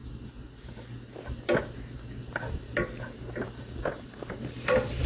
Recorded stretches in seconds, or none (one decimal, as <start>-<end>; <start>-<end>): 0.0-2.2; 2.7-3.6